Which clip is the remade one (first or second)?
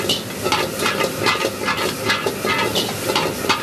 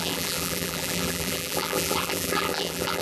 second